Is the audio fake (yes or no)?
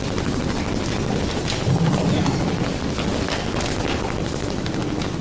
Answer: no